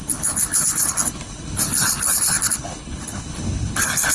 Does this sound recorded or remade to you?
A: remade